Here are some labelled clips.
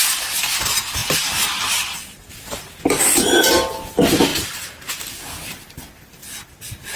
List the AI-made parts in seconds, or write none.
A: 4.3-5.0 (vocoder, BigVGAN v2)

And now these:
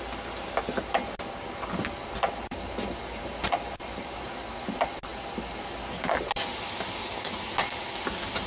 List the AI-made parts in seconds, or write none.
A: 3.0-4.3 (vocoder, BigVGAN v2)

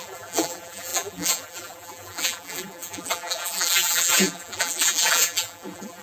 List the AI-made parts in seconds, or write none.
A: 0.0-6.0 (vocoder, BigVGAN v2)

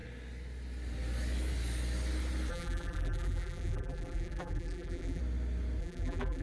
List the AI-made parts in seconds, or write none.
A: 2.5-5.2 (vocoder, BigVGAN v2); 5.8-6.4

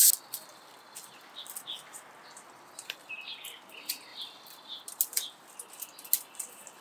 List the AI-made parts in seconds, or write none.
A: 4.1-4.8 (vocoder, BigVGAN v2)